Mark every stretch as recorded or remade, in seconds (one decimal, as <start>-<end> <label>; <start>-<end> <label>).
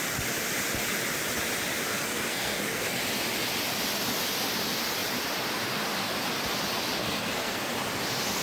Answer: 0.0-1.9 recorded; 1.9-3.0 remade; 3.0-7.0 recorded; 7.0-7.7 remade; 7.7-8.4 recorded